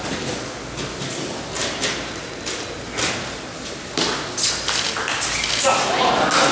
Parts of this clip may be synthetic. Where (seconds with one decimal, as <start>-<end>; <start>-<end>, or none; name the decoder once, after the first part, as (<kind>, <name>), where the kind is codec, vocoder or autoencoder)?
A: none